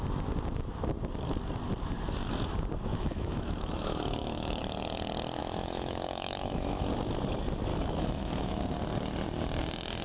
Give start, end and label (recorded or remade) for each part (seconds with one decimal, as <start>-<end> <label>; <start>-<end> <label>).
0.0-2.9 recorded; 2.9-4.6 remade; 4.6-5.4 recorded; 5.4-6.8 remade; 6.8-7.7 recorded; 7.7-8.6 remade; 8.6-10.0 recorded